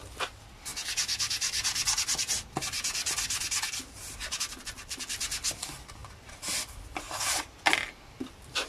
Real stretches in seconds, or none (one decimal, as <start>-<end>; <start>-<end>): 0.0-8.7

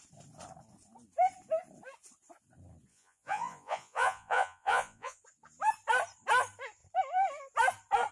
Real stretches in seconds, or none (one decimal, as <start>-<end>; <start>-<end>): 0.0-2.9; 5.2-8.1

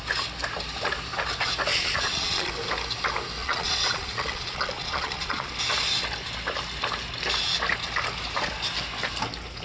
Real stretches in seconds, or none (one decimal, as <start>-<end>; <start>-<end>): 0.0-1.7; 2.5-3.4; 5.5-9.6

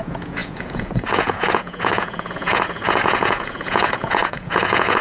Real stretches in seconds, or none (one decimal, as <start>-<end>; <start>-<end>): none